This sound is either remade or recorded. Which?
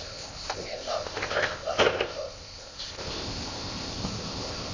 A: remade